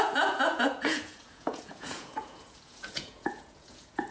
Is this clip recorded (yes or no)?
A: no